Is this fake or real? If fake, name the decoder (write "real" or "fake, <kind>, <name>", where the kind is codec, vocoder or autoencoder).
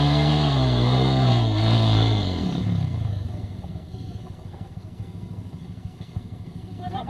fake, codec, SNAC